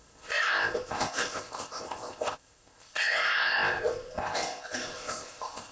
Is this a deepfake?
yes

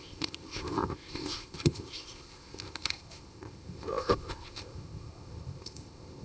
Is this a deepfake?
yes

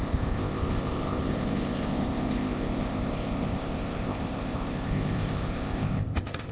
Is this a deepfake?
yes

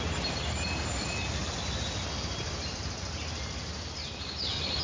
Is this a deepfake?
no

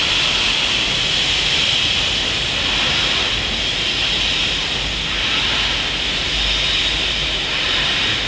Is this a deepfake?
no